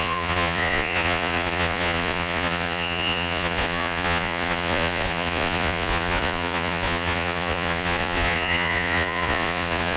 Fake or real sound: fake